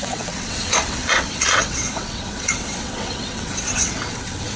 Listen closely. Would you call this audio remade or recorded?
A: remade